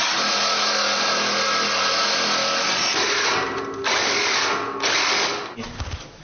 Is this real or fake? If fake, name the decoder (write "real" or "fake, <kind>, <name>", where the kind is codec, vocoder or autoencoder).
real